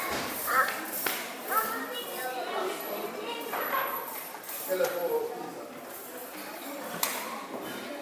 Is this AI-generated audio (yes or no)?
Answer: yes